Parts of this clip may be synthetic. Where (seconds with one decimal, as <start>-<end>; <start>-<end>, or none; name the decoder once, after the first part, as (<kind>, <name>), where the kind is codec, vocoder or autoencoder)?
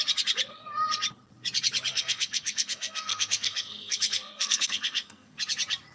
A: 1.9-5.4 (codec, SNAC)